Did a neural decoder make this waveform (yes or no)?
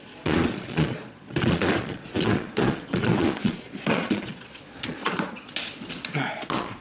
yes